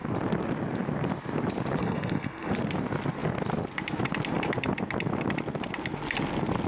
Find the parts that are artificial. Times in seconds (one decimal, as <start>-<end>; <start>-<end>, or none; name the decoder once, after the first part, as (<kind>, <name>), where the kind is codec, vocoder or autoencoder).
1.8-2.5 (codec, SNAC)